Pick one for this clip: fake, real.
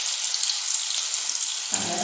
real